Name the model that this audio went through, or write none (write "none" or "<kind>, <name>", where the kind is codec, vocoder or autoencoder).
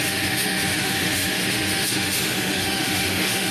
autoencoder, DAC-VAE